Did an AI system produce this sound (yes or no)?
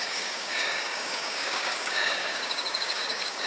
yes